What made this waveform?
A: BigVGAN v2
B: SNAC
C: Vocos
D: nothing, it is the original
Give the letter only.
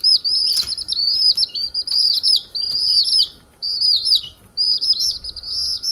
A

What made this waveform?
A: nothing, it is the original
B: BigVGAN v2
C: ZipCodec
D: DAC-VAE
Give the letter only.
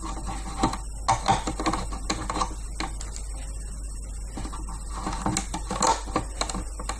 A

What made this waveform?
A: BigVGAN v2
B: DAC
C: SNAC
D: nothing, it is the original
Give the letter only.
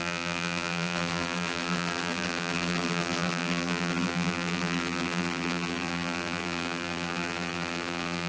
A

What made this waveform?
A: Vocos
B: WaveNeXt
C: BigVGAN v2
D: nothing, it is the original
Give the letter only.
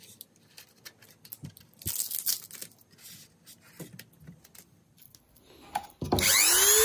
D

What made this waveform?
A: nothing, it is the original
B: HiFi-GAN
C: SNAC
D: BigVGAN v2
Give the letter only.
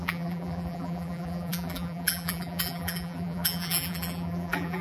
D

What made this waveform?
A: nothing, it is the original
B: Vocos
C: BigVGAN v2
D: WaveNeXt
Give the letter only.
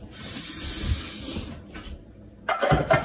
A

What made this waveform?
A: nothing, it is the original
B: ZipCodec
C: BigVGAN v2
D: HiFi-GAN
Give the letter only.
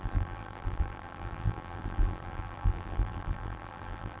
C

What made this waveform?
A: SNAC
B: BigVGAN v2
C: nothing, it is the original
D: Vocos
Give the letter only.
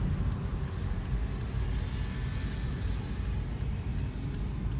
C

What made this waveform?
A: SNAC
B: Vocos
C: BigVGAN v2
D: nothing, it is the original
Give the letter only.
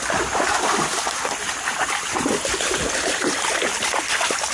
C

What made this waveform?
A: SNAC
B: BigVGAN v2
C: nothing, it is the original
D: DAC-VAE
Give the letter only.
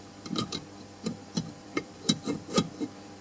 B